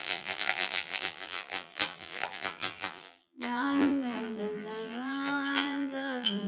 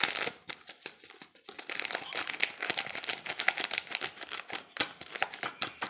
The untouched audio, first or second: second